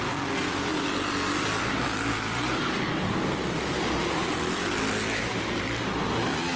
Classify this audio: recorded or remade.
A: recorded